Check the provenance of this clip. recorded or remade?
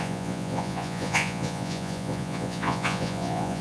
remade